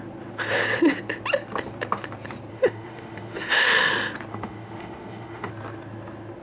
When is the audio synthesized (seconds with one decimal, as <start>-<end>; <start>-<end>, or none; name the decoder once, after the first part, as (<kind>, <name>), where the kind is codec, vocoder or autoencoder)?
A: 2.5-3.9 (autoencoder, DAC-VAE); 4.3-5.5

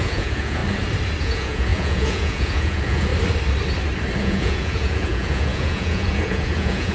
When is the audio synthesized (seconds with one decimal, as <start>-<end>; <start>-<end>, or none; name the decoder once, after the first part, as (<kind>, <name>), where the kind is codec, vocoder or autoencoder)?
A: 0.0-0.6 (vocoder, Vocos); 1.2-3.1; 4.2-6.9

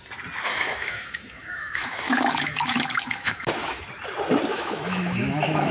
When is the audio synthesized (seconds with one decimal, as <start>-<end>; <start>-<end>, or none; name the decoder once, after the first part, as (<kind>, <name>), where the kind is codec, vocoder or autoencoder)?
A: 0.5-3.8 (autoencoder, DAC-VAE); 4.5-5.7

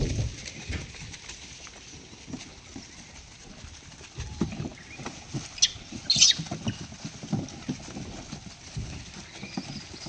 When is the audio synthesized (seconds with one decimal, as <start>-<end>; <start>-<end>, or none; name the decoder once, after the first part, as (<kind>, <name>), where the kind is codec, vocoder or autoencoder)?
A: none

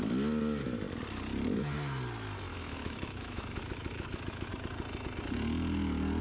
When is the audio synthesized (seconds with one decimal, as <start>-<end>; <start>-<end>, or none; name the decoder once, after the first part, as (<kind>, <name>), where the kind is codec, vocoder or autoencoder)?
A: 2.5-4.5 (autoencoder, DAC-VAE)

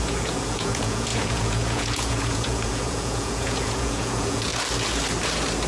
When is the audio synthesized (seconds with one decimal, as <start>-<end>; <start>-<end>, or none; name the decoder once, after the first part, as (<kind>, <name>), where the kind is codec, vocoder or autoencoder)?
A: 0.0-4.5 (vocoder, Vocos)

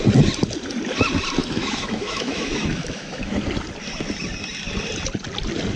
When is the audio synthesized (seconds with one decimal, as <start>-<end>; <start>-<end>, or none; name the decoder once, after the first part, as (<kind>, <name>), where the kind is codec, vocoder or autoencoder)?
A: 1.4-3.3 (autoencoder, DAC-VAE)

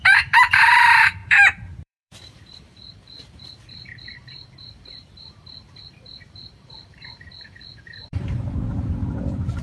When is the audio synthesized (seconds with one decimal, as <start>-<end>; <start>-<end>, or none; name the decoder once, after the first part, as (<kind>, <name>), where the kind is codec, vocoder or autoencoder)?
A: 0.0-9.6 (vocoder, BigVGAN v2)